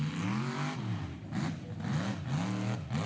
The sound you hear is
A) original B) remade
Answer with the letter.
A